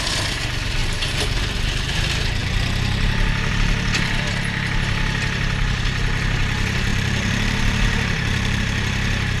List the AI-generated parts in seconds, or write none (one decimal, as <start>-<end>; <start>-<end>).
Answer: 0.8-1.4; 6.9-8.6